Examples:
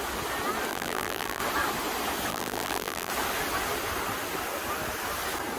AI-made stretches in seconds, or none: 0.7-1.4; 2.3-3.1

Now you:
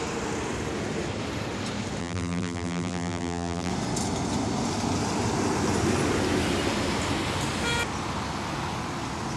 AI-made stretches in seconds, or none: 2.0-3.7

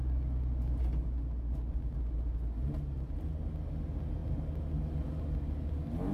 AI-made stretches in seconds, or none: none

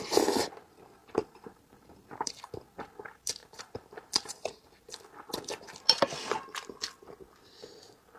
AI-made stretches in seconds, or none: 1.0-2.5; 3.4-4.9

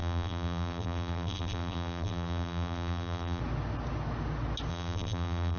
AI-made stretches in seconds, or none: 0.0-3.4; 4.7-5.6

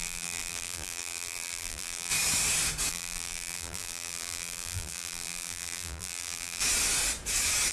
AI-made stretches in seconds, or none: 0.0-2.1; 2.9-6.6